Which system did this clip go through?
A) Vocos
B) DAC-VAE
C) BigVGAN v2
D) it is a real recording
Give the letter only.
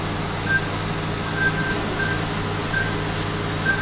D